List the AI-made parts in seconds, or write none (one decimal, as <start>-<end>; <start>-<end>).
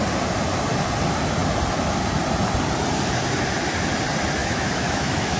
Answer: 4.4-5.4